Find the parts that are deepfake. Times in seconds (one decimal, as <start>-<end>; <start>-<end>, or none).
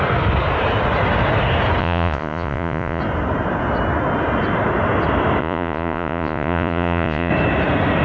1.8-3.0; 5.4-7.3